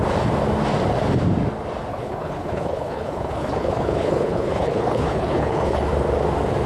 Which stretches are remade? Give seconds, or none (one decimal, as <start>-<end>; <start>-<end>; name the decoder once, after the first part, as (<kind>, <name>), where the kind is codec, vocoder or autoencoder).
1.9-5.9 (codec, HILCodec)